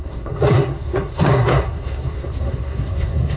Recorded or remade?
remade